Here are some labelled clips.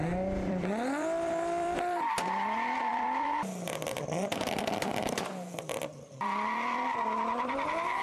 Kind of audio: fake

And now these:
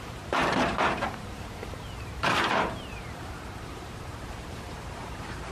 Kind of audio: fake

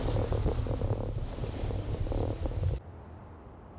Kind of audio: real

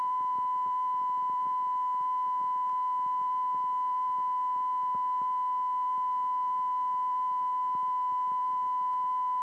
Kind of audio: real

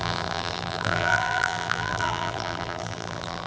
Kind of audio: fake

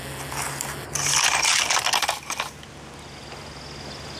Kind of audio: real